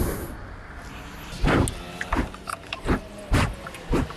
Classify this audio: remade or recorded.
recorded